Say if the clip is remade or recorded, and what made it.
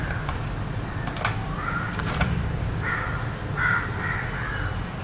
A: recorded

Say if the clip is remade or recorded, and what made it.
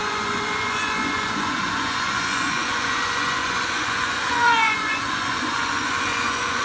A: remade, vocoder, Vocos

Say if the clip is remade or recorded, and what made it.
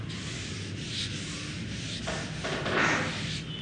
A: recorded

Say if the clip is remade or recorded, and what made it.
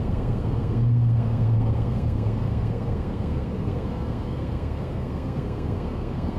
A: remade, codec, SNAC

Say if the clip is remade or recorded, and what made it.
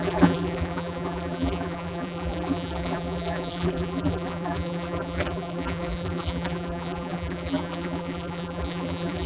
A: remade, vocoder, BigVGAN v2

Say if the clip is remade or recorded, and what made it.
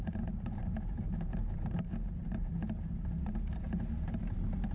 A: remade, vocoder, BigVGAN v2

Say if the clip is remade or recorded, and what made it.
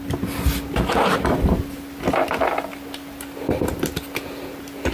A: recorded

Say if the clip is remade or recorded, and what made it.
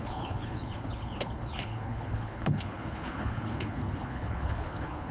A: remade, codec, HILCodec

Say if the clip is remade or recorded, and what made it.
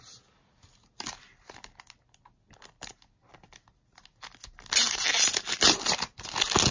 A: recorded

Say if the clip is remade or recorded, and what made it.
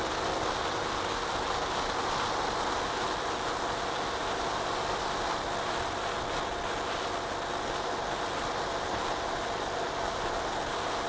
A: recorded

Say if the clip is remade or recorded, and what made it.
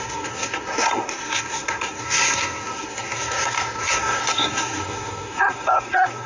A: remade, codec, SNAC